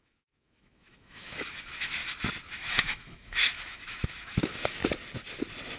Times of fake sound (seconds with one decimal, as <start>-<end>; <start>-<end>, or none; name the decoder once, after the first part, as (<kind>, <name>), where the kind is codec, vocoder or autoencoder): 0.0-2.0 (autoencoder, DAC-VAE); 2.5-4.8

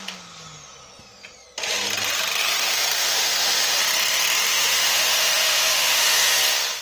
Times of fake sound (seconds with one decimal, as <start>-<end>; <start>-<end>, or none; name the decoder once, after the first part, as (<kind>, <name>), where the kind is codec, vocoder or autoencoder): 2.4-3.8 (autoencoder, DAC-VAE); 4.5-6.3

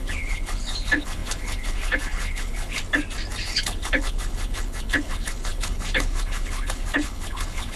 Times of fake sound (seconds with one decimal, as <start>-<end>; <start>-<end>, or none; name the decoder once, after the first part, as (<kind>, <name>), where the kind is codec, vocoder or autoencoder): 0.0-2.8 (codec, HILCodec); 3.4-7.8